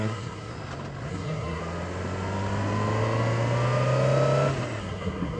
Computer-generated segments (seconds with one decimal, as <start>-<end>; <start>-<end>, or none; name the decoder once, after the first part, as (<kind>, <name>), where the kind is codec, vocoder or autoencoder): 0.0-0.5 (codec, SNAC); 1.1-1.6; 4.8-5.4